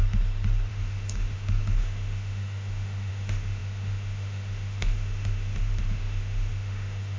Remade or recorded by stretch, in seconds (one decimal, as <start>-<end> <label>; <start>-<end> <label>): 0.0-0.7 recorded; 0.7-7.2 remade